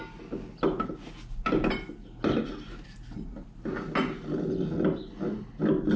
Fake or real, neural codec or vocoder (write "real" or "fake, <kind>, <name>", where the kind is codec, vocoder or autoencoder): real